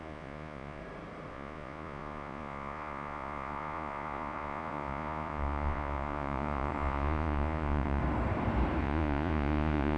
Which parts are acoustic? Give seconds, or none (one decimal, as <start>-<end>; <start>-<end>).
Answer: 0.8-1.3; 8.0-8.8